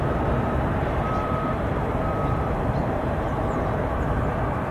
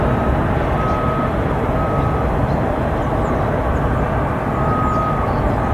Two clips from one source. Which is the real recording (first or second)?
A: second